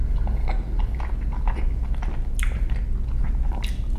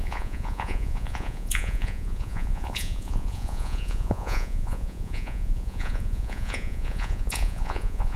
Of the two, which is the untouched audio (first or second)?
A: first